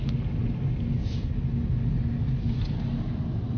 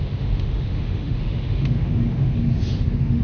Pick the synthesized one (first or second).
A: second